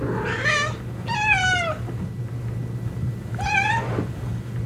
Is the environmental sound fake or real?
real